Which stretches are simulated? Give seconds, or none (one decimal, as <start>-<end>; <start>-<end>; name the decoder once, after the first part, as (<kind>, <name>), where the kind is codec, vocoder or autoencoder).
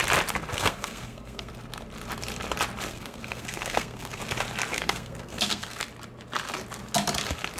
0.5-1.5 (codec, SNAC); 2.9-4.2; 4.7-5.8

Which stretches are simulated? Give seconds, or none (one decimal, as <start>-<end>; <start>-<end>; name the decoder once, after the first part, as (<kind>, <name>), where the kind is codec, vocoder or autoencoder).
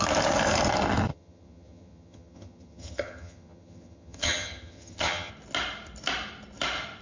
1.1-5.3 (vocoder, HiFi-GAN)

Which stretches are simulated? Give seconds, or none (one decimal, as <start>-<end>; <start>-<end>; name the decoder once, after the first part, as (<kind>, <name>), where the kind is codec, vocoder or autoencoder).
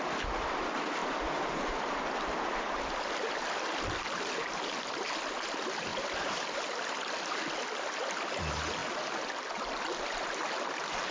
1.0-3.8 (vocoder, BigVGAN v2); 5.9-7.0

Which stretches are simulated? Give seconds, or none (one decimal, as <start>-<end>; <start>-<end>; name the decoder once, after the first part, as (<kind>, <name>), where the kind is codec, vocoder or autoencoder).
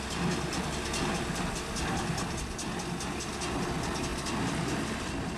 none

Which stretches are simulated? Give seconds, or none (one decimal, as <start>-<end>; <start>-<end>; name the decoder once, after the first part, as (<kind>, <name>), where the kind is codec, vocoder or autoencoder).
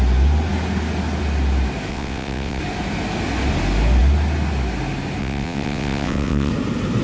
1.9-2.6 (vocoder, WaveNeXt); 5.2-6.5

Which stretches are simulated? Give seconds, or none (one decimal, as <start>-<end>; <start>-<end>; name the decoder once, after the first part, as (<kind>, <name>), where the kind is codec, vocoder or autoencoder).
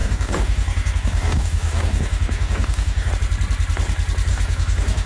0.0-3.1 (codec, DAC); 4.3-5.1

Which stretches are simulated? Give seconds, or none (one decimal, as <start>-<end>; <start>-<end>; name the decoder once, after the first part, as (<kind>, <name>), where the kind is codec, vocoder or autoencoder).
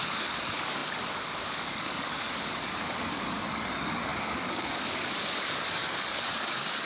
0.0-6.9 (codec, DAC)